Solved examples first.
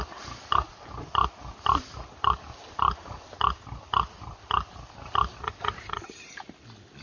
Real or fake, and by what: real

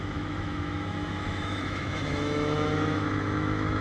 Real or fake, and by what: fake, autoencoder, DAC-VAE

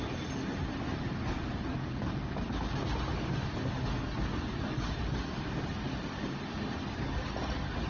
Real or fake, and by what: real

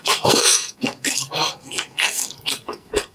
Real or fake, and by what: fake, codec, SNAC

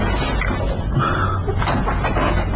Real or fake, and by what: real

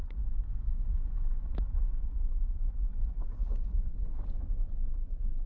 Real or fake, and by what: fake, vocoder, Vocos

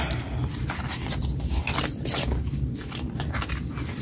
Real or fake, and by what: real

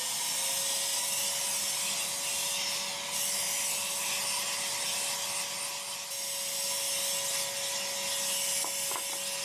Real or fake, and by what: real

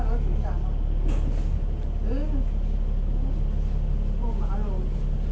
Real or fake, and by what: real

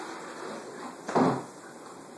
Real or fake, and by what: real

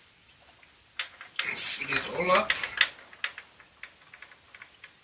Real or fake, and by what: real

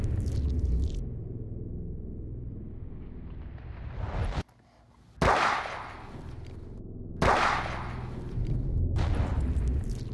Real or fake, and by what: real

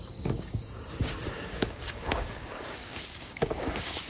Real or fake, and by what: fake, codec, DAC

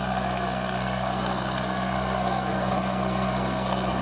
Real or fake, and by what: fake, codec, SNAC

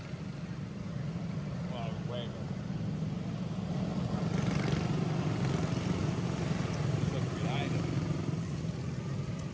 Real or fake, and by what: real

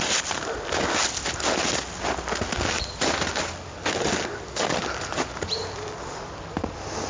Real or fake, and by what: real